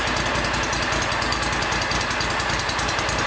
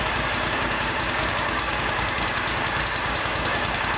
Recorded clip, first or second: first